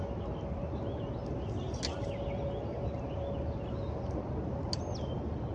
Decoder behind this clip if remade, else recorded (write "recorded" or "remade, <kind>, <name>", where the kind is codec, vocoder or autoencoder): recorded